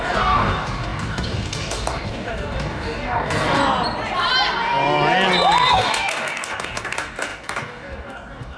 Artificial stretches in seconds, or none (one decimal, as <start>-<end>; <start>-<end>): 0.0-3.6; 5.7-8.6